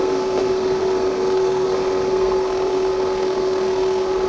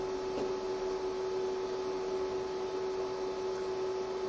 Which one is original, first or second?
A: second